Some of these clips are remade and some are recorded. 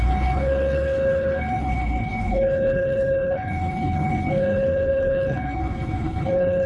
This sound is remade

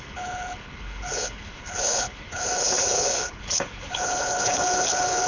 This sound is remade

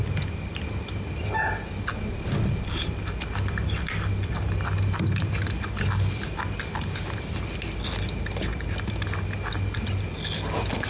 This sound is recorded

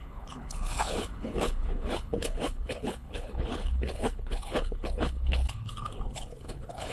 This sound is remade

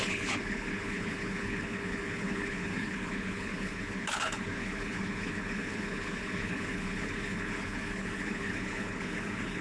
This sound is remade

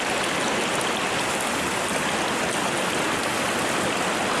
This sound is recorded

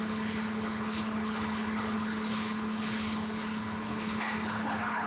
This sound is remade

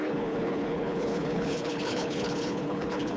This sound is remade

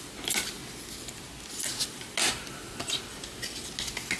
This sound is recorded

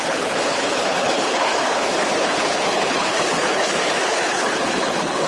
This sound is remade